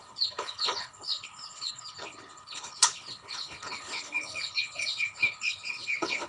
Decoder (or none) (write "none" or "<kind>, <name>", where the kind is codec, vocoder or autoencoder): codec, HILCodec